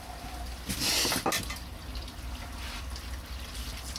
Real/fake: real